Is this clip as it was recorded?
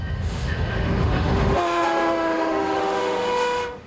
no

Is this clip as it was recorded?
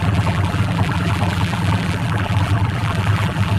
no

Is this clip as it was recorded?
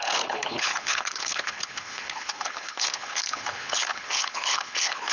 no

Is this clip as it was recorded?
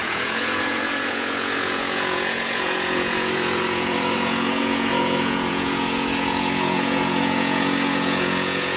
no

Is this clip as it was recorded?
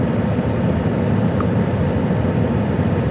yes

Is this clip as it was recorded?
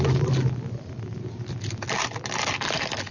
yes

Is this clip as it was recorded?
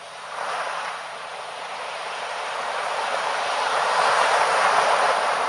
no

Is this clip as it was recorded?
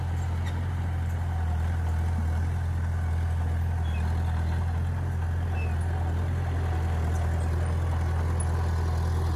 yes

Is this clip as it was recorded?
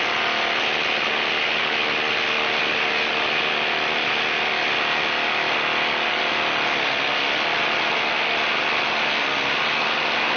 yes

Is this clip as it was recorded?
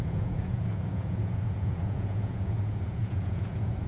no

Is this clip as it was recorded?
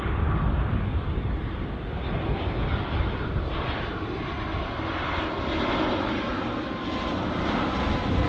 yes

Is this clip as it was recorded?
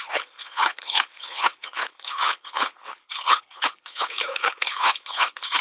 no